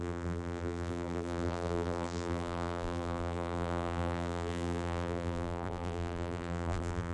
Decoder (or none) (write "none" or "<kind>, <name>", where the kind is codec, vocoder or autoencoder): vocoder, BigVGAN v2